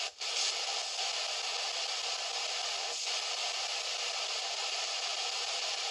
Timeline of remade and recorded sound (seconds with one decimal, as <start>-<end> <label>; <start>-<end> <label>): 0.0-0.8 remade; 0.8-3.0 recorded; 3.0-3.4 remade; 3.4-4.4 recorded; 4.4-5.9 remade